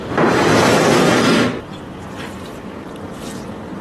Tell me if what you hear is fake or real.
fake